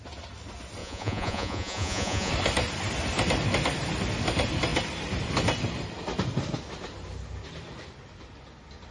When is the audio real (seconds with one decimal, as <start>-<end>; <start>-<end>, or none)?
0.0-0.8; 2.3-8.9